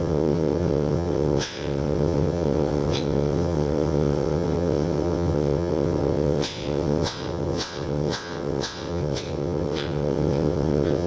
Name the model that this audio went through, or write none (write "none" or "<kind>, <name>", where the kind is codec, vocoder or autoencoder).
vocoder, WaveNeXt